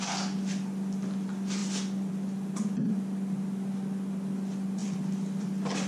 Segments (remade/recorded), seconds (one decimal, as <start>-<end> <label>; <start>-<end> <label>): 0.0-4.8 recorded; 4.8-5.9 remade